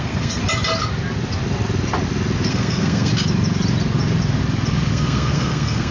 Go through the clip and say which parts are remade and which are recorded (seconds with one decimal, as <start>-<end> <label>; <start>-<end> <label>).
0.0-0.4 remade; 0.4-2.5 recorded; 2.5-3.1 remade; 3.1-4.9 recorded; 4.9-5.9 remade